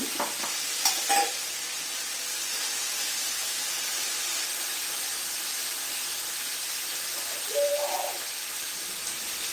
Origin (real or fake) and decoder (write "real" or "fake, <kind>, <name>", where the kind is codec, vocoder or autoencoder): real